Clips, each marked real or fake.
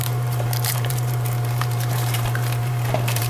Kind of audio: fake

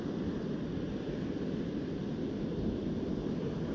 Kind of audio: real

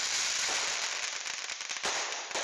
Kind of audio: fake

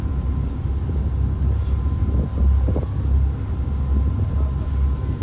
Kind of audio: real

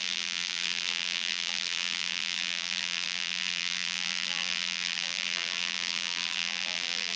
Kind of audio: fake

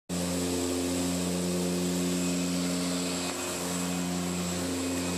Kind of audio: real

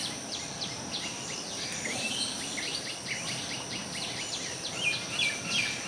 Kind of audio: fake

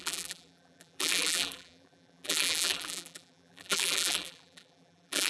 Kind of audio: fake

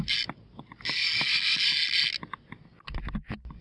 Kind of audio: real